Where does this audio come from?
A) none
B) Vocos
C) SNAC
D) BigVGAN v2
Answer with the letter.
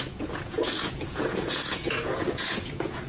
B